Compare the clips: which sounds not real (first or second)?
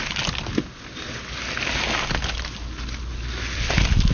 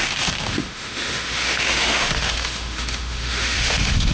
second